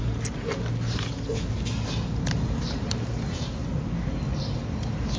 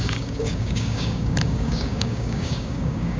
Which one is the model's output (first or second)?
second